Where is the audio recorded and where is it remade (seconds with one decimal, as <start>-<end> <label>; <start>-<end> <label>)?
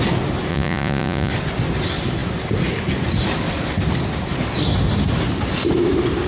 0.0-0.5 recorded; 0.5-1.3 remade; 1.3-6.3 recorded